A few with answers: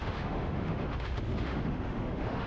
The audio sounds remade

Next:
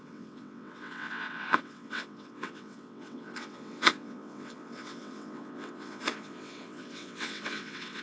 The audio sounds remade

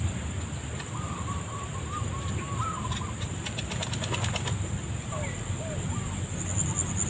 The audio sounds recorded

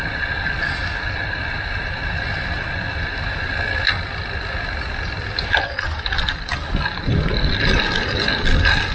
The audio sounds recorded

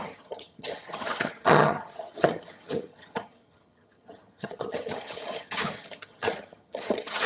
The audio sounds remade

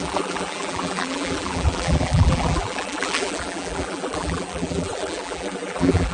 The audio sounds remade